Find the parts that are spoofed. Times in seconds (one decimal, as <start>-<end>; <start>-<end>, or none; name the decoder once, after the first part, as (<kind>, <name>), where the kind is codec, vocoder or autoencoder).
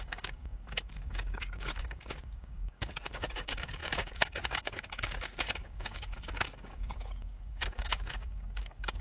0.0-9.0 (codec, DAC)